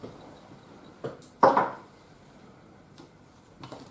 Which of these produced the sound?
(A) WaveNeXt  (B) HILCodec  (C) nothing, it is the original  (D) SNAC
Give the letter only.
C